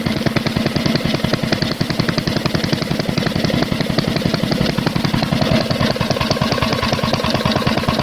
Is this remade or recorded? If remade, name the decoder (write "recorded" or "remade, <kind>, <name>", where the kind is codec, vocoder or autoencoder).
remade, vocoder, BigVGAN v2